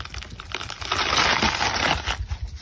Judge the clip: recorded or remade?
recorded